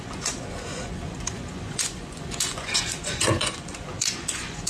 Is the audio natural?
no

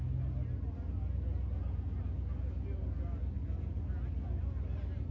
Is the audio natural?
yes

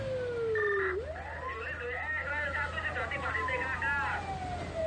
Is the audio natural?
yes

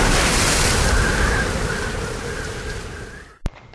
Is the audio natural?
yes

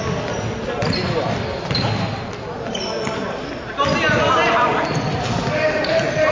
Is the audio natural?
yes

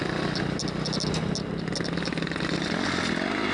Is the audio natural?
yes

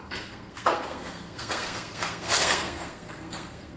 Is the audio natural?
no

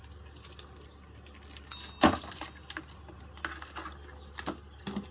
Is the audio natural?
yes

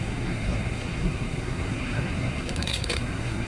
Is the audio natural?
no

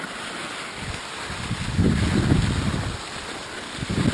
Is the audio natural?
yes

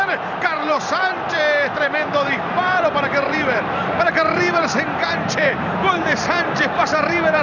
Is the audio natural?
no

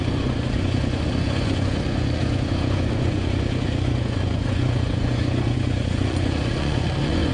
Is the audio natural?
no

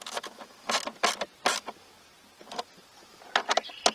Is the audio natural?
yes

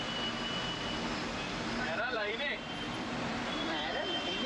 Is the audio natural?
no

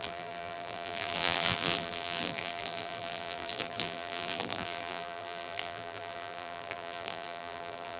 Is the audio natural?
no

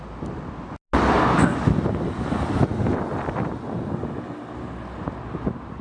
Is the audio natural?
yes